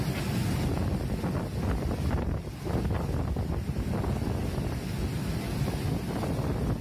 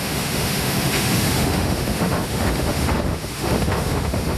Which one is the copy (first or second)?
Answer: second